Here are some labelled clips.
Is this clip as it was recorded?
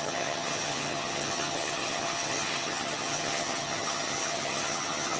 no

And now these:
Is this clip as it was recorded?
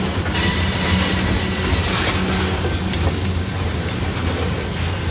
yes